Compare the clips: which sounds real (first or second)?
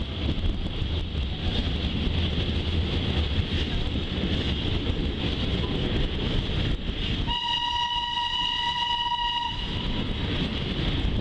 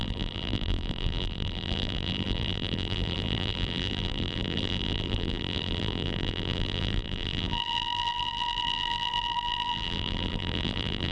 first